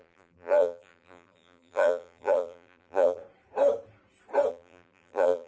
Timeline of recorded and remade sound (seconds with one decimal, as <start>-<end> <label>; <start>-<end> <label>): 0.0-3.2 remade; 3.2-4.5 recorded; 4.5-5.5 remade